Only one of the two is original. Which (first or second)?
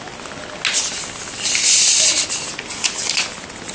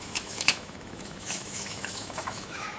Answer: first